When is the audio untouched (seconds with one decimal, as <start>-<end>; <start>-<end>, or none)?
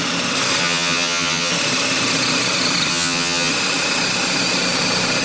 0.0-0.6; 1.5-2.9; 3.5-5.2